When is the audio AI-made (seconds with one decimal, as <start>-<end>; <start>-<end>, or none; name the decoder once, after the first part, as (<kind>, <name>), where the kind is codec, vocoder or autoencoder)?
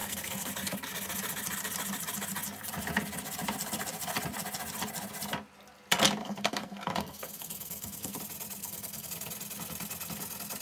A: 0.0-0.5 (codec, SNAC); 6.2-8.2; 8.6-9.1